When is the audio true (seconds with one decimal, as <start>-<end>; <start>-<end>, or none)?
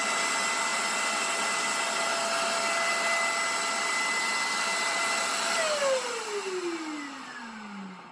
0.0-8.1